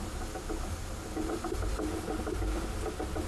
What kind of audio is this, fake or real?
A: real